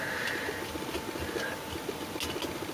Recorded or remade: recorded